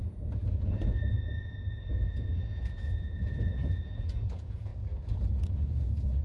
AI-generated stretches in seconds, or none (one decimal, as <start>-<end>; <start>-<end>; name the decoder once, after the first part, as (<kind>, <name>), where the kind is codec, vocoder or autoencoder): 0.0-4.7 (vocoder, Vocos); 5.4-6.2